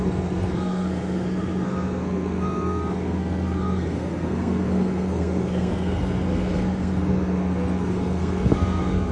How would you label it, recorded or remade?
remade